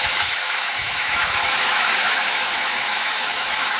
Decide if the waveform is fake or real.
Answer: fake